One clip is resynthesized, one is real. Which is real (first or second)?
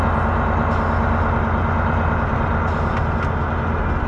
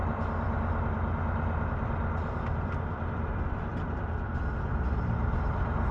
first